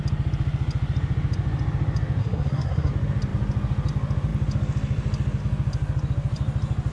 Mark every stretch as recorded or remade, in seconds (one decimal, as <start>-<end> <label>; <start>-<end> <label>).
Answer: 0.0-2.2 recorded; 2.2-2.9 remade; 2.9-6.9 recorded